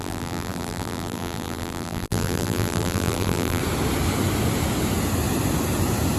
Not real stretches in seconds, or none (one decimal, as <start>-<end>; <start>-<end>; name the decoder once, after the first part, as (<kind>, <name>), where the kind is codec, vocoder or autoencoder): 0.0-3.6 (vocoder, BigVGAN v2)